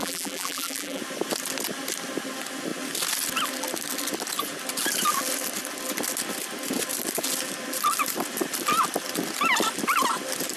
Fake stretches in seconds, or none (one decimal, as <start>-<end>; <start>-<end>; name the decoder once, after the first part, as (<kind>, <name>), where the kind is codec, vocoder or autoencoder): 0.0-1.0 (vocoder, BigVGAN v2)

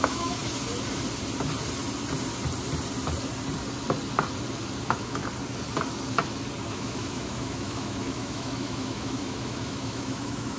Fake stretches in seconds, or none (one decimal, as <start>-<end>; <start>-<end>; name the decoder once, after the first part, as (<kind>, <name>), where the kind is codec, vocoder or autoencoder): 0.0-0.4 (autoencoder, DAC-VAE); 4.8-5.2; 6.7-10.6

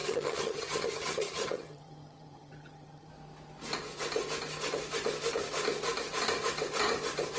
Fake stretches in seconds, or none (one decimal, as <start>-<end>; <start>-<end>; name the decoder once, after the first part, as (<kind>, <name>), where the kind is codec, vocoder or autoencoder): 0.0-3.1 (vocoder, HiFi-GAN)

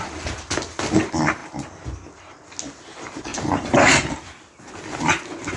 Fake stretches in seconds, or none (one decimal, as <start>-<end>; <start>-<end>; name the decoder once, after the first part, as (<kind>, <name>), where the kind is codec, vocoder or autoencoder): 3.3-4.1 (vocoder, BigVGAN v2)

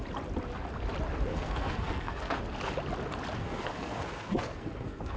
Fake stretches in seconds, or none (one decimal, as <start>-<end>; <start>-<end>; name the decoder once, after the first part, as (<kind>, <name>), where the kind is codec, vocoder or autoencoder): 1.3-2.4 (codec, SNAC); 3.4-5.2